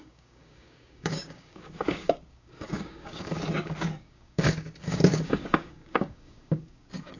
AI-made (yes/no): yes